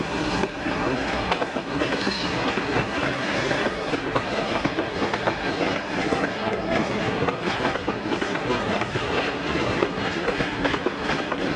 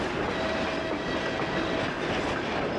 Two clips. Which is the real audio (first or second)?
second